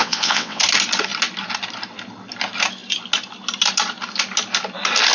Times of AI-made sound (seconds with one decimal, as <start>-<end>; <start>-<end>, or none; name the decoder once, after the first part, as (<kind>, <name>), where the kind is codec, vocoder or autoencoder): 0.0-0.6 (vocoder, WaveNeXt)